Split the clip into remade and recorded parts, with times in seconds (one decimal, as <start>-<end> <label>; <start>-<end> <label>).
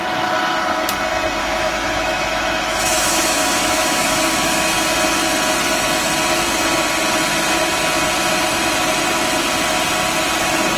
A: 0.0-1.4 recorded; 1.4-4.7 remade; 4.7-10.8 recorded